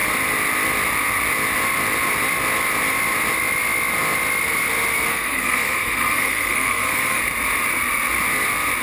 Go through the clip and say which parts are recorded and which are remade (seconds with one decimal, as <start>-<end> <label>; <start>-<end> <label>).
0.0-5.1 recorded; 5.1-7.2 remade; 7.2-8.8 recorded